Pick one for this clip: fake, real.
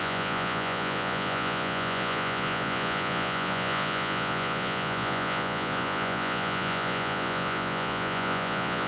fake